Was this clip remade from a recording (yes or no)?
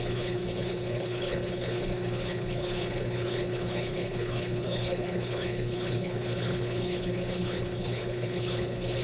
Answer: yes